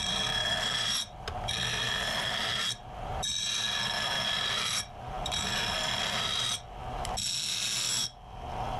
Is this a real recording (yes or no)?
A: yes